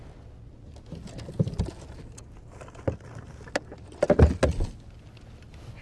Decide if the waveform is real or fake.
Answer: real